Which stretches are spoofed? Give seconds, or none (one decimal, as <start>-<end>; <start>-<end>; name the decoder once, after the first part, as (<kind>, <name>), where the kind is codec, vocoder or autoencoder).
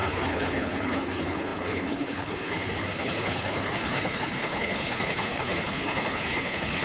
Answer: 0.0-6.8 (codec, HILCodec)